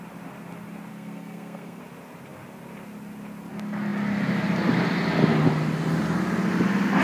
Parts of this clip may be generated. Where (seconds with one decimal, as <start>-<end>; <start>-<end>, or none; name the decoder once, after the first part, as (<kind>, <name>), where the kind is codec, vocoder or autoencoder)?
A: 0.9-1.8 (codec, SNAC)